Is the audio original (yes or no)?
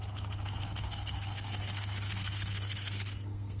no